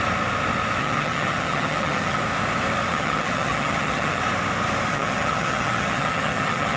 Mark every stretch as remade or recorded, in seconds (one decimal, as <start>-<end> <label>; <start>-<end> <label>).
0.0-0.8 recorded; 0.8-2.2 remade; 2.2-2.9 recorded; 2.9-4.2 remade; 4.2-4.9 recorded; 4.9-6.8 remade